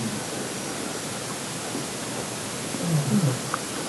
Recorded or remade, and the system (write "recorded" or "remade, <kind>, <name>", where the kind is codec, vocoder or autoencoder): recorded